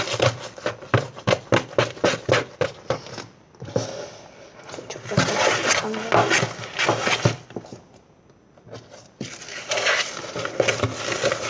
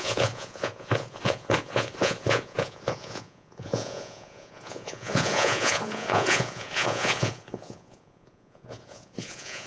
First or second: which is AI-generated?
second